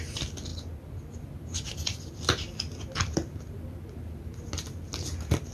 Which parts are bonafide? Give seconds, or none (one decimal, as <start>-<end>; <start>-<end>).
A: 0.0-5.5